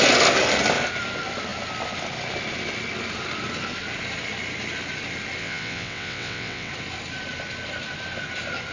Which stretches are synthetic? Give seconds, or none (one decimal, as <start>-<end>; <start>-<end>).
5.4-6.7